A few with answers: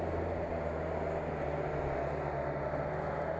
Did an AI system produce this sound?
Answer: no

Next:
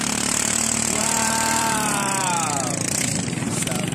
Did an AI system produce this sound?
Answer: yes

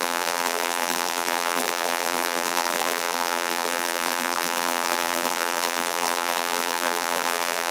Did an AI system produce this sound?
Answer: yes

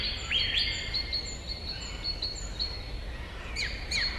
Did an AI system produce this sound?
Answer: no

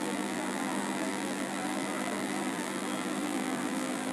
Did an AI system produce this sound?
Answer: yes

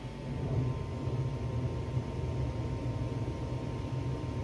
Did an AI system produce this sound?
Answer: no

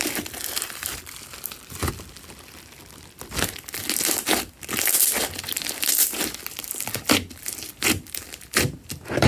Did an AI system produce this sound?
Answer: no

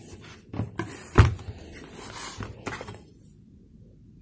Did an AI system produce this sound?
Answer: yes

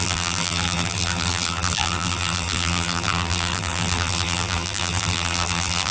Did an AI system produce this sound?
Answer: yes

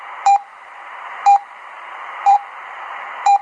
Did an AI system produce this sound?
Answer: yes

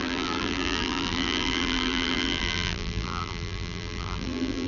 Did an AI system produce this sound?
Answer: yes